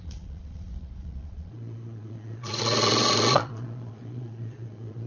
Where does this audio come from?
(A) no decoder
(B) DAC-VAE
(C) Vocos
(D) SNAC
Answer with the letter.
C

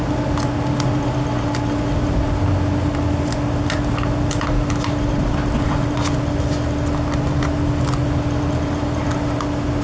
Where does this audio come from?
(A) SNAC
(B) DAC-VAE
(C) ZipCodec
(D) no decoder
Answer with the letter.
D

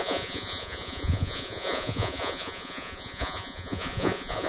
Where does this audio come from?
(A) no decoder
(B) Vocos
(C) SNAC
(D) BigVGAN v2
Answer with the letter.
B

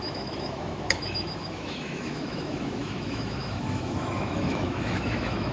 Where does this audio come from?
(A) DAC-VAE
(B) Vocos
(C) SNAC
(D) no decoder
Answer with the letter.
A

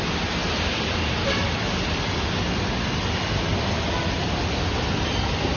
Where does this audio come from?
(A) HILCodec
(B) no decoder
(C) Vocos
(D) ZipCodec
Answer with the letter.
B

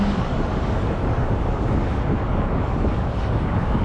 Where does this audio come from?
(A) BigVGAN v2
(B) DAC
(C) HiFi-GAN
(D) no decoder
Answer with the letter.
B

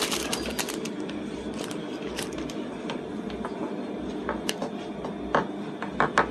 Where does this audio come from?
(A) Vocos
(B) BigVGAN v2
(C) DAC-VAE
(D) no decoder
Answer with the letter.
B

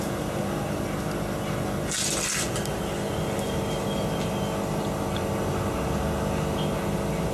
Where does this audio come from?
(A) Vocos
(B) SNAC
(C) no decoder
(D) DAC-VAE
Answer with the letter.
C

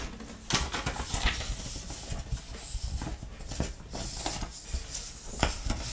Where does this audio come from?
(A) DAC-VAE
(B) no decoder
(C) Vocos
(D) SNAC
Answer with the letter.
B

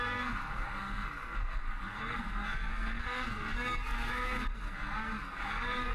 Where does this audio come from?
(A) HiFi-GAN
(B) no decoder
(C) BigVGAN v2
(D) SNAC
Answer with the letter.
D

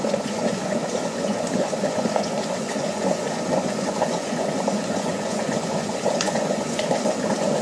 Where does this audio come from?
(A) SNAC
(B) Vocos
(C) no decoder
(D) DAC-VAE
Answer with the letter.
B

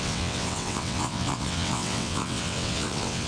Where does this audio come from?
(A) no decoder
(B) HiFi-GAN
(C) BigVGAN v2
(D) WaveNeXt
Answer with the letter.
D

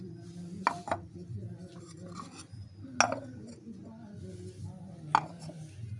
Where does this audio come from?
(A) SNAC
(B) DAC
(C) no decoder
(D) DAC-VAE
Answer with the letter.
C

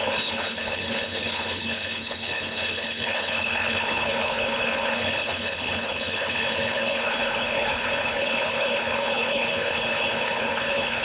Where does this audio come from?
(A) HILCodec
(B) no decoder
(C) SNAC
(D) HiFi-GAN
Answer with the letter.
A